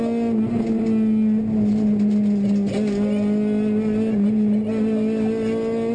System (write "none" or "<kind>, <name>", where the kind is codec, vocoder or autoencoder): none